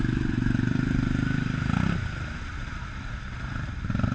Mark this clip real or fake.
real